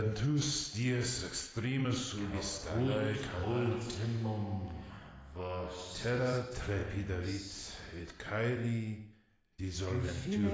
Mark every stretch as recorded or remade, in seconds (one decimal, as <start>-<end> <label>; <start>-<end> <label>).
0.0-3.4 recorded; 3.4-4.9 remade; 4.9-10.5 recorded